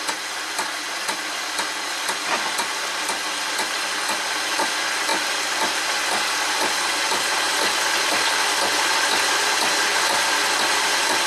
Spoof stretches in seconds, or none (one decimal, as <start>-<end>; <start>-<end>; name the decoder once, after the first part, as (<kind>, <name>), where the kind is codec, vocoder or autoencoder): none